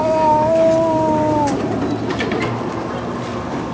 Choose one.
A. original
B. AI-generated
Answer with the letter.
A